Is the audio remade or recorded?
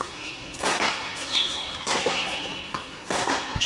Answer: remade